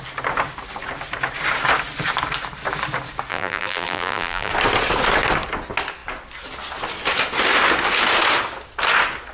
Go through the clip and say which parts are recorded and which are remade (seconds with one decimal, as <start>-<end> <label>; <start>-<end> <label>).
0.0-3.3 recorded; 3.3-4.5 remade; 4.5-9.3 recorded